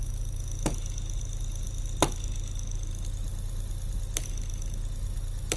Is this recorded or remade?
recorded